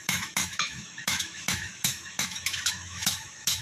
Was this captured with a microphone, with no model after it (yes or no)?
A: no